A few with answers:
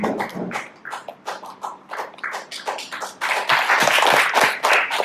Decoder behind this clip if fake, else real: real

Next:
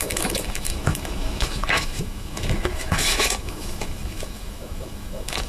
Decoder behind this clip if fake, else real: fake, autoencoder, DAC-VAE